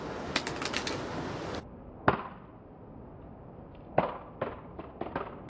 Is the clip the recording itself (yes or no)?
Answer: yes